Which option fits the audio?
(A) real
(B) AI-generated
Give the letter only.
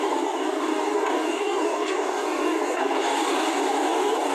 B